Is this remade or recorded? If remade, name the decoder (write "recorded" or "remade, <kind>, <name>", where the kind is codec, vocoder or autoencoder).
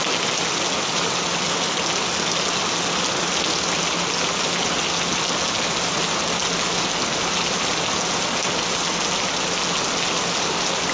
recorded